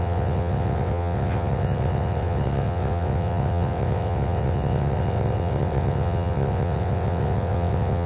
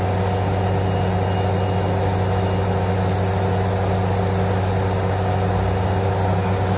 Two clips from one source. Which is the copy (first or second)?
first